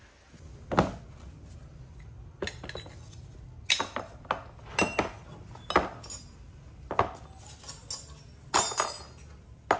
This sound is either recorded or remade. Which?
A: recorded